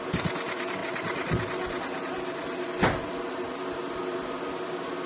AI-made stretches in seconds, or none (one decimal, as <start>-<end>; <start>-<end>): none